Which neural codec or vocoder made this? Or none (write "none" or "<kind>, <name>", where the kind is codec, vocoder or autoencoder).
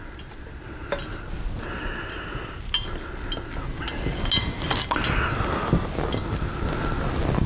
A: none